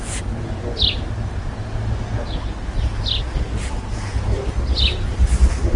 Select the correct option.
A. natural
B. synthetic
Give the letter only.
A